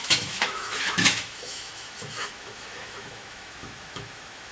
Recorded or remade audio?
remade